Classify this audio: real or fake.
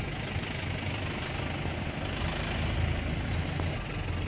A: real